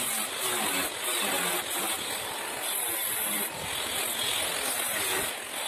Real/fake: real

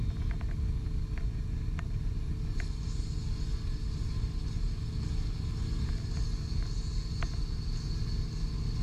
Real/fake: real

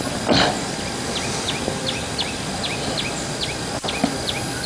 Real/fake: real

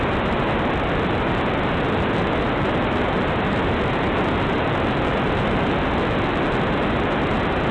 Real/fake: real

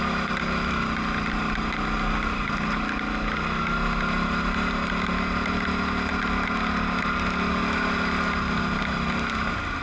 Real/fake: real